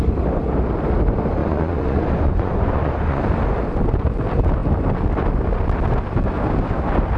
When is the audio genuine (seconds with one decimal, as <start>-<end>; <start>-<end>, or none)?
0.0-1.4; 3.2-7.2